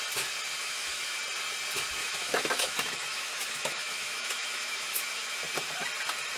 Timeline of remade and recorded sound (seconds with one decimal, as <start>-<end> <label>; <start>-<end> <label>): 0.0-0.6 recorded; 0.6-1.2 remade; 1.2-2.0 recorded; 2.0-5.4 remade; 5.4-6.4 recorded